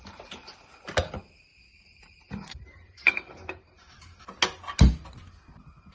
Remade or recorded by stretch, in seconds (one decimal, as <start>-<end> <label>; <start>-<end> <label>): 0.0-1.5 recorded; 1.5-4.2 remade; 4.2-5.9 recorded